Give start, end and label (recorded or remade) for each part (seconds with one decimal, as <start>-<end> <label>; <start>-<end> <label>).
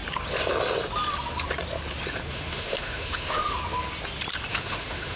0.0-2.3 recorded; 2.3-3.6 remade; 3.6-4.5 recorded; 4.5-5.2 remade